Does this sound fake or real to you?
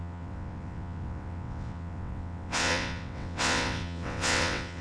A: fake